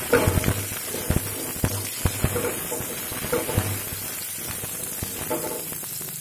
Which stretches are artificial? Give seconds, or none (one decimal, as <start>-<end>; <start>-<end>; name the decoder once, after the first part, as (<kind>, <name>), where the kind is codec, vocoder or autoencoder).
3.9-4.8 (vocoder, BigVGAN v2)